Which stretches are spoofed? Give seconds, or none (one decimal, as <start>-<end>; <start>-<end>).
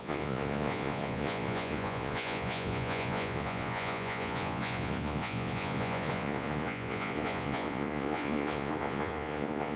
0.0-9.8